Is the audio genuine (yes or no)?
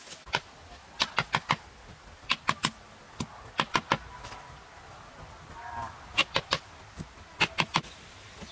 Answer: yes